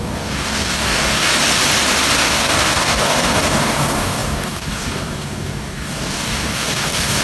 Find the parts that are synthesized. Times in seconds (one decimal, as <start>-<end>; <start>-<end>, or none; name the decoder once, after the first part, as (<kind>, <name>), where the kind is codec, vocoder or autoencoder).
0.0-1.3 (codec, DAC); 2.2-7.2